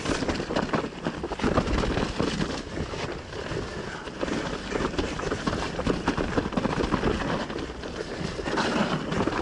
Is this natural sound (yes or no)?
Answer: yes